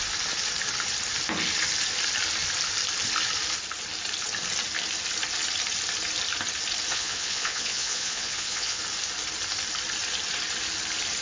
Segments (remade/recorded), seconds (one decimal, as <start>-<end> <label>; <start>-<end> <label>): 0.0-6.9 recorded; 6.9-8.8 remade; 8.8-11.2 recorded